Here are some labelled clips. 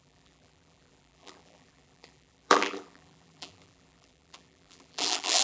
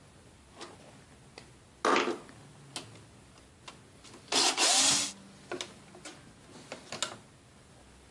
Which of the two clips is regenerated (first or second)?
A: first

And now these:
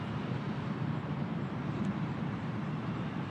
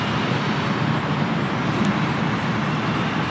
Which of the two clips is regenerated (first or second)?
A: first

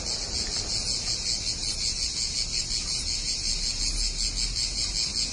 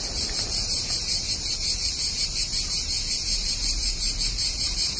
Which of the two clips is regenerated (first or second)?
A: second